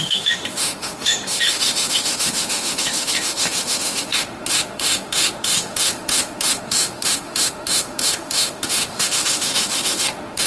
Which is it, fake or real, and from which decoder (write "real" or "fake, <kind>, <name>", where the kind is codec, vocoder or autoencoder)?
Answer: fake, autoencoder, DAC-VAE